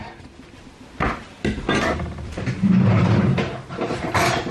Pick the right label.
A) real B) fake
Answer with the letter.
A